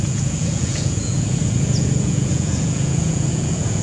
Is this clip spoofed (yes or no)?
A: yes